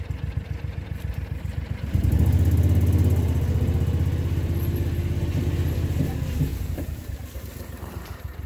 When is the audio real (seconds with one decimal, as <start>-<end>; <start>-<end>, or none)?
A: 0.0-6.5

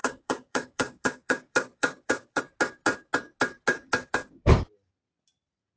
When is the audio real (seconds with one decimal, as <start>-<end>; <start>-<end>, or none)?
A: 2.4-3.7; 4.5-5.8

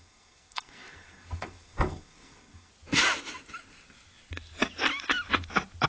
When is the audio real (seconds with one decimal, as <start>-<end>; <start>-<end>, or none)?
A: 2.7-5.9

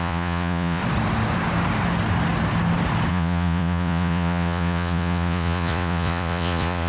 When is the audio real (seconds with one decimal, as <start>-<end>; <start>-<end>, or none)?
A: 0.8-3.1

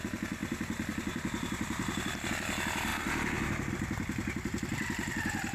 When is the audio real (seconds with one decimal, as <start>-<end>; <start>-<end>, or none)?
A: 2.9-3.7

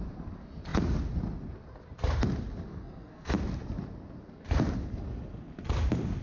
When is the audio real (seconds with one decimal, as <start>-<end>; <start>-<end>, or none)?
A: 0.0-2.7; 3.3-6.2

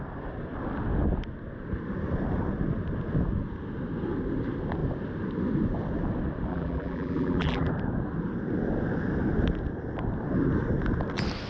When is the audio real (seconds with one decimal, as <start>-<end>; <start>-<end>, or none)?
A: 0.0-6.5; 7.7-11.5